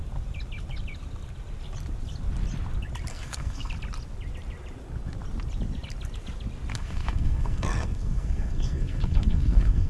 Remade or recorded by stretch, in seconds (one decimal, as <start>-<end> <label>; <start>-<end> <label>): 0.0-3.1 recorded; 3.1-3.7 remade; 3.7-6.7 recorded; 6.7-9.9 remade